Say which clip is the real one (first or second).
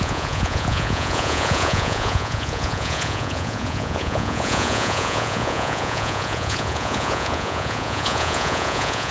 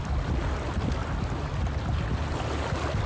second